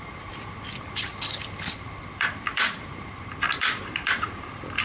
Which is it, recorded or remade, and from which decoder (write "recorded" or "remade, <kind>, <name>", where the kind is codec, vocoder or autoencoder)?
remade, vocoder, BigVGAN v2